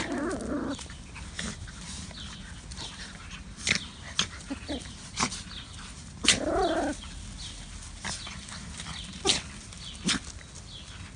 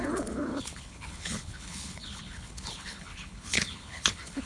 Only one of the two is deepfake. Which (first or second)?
second